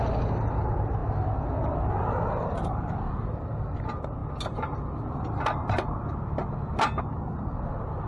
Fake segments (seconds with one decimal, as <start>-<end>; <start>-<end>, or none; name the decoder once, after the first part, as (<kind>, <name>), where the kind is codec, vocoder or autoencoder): none